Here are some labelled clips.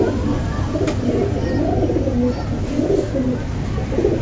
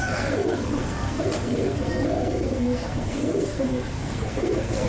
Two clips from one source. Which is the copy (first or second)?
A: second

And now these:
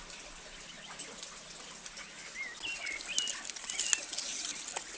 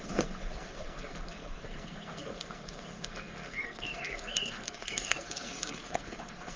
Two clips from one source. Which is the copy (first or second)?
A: second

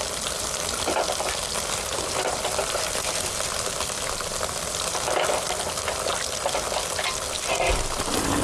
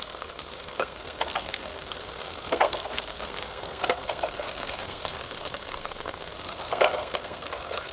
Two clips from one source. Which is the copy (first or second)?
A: second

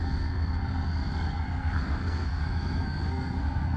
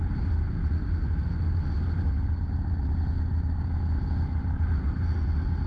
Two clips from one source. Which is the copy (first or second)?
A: first